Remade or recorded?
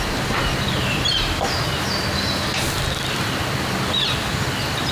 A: recorded